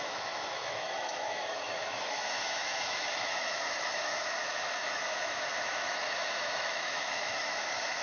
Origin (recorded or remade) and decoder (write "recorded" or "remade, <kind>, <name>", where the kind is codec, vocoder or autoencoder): remade, autoencoder, DAC-VAE